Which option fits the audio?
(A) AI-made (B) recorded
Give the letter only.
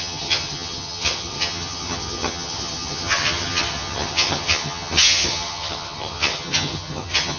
A